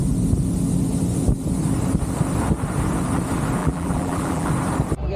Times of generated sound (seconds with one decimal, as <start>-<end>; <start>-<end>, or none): 3.6-4.5